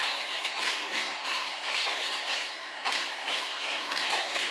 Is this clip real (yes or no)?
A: no